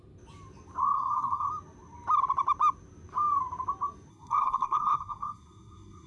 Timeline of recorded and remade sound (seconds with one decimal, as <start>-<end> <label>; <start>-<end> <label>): 0.0-0.8 recorded; 0.8-1.5 remade; 1.5-4.1 recorded; 4.1-6.1 remade